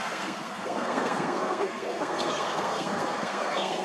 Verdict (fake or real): fake